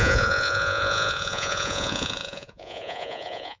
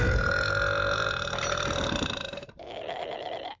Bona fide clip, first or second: second